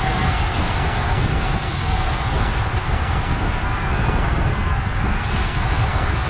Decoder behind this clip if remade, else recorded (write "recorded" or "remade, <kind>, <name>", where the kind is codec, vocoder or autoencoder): remade, codec, SNAC